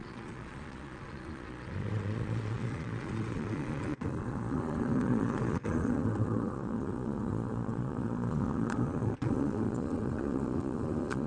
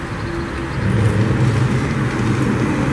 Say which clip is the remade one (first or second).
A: first